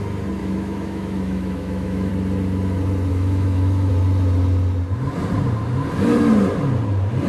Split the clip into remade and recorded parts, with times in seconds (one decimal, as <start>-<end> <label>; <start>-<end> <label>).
0.0-0.4 recorded; 0.4-2.1 remade; 2.1-3.1 recorded; 3.1-3.9 remade; 3.9-7.3 recorded